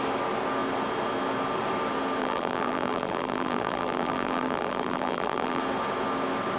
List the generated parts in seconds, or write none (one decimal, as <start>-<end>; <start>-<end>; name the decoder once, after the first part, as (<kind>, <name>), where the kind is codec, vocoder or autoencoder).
2.2-5.6 (vocoder, BigVGAN v2)